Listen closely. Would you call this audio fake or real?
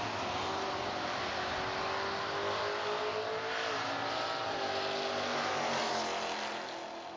real